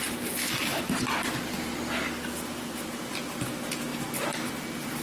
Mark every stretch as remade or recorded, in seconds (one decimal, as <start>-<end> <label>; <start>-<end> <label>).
0.0-5.0 recorded